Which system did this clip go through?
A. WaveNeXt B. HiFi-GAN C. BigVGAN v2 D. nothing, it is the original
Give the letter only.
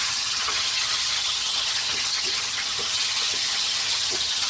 B